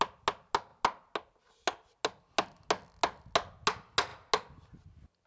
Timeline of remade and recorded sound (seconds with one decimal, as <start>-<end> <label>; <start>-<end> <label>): 0.0-5.3 recorded